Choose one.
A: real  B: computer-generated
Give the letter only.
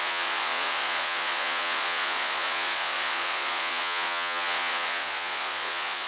B